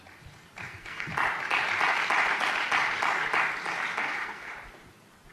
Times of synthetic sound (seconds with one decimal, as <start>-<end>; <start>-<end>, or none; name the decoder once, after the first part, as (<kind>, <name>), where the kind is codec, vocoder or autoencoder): 0.6-1.1 (codec, SNAC); 4.0-4.5